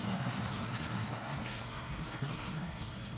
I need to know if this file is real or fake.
fake